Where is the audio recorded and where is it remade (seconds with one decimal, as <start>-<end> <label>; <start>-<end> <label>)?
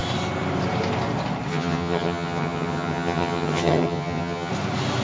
0.0-1.5 recorded; 1.5-4.5 remade; 4.5-5.0 recorded